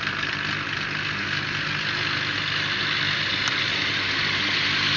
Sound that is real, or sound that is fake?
real